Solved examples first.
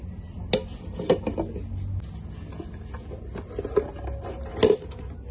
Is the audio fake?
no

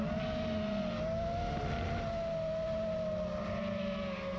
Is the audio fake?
no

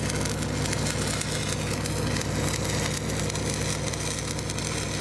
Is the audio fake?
no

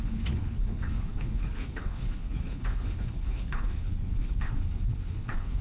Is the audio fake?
yes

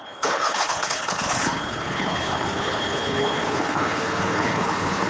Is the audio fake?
yes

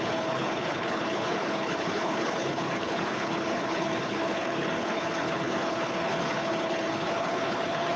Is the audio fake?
yes